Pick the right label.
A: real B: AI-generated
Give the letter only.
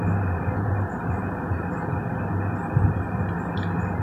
A